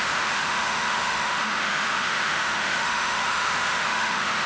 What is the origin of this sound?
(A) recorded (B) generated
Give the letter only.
B